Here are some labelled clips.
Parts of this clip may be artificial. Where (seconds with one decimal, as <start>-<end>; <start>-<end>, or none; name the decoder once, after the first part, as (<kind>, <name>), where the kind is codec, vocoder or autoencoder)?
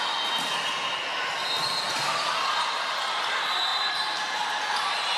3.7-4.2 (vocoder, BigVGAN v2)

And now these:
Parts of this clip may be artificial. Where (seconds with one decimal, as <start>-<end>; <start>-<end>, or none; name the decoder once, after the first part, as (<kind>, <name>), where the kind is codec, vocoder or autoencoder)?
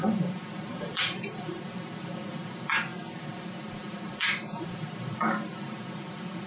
0.0-2.9 (vocoder, BigVGAN v2); 3.7-6.5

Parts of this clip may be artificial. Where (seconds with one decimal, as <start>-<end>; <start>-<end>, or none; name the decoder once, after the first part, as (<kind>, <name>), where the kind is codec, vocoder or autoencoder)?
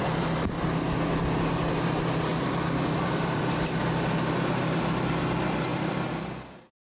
2.3-3.4 (vocoder, BigVGAN v2)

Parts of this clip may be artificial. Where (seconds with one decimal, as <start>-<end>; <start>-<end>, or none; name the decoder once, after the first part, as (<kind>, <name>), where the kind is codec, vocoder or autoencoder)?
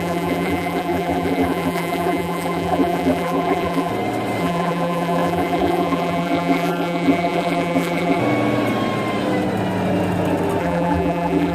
0.0-3.9 (vocoder, BigVGAN v2); 4.4-8.2; 10.6-11.5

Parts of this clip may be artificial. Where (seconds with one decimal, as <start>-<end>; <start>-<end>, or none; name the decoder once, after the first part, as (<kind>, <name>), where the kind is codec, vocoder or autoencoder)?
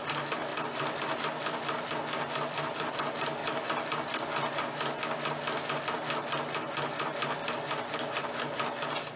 0.5-2.9 (vocoder, BigVGAN v2)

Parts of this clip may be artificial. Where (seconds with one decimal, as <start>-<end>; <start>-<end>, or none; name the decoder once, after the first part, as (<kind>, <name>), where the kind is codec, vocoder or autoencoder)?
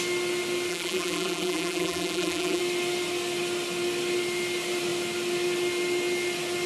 0.7-2.6 (vocoder, BigVGAN v2)